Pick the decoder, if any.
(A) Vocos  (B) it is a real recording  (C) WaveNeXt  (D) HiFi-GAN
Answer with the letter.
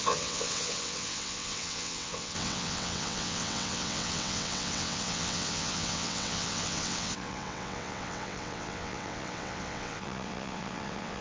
C